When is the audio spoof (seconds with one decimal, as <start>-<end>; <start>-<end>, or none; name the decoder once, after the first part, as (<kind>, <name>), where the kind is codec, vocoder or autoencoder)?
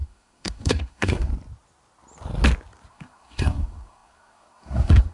0.0-1.3 (codec, SNAC); 2.9-5.1